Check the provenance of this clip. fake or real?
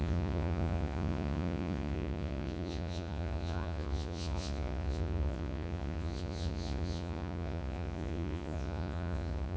fake